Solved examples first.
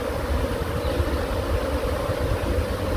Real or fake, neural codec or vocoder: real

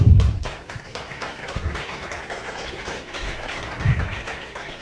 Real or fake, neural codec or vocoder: fake, codec, SNAC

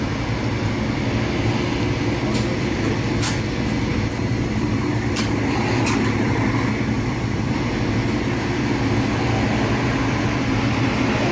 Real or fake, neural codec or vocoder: real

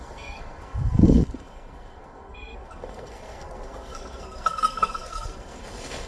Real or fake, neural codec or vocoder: fake, codec, SNAC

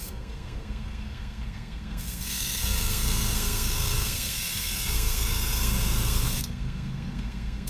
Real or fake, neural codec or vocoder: fake, codec, SNAC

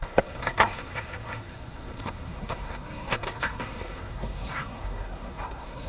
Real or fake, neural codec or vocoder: fake, codec, SNAC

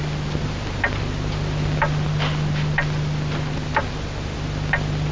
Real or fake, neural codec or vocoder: real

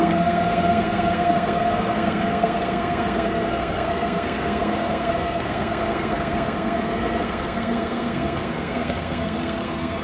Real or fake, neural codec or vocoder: fake, codec, SNAC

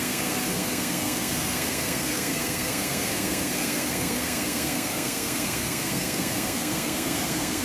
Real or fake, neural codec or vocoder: fake, codec, SNAC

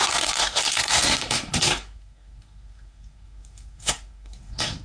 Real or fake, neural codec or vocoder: fake, codec, SNAC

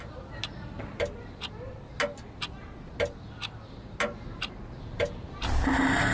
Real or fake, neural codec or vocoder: real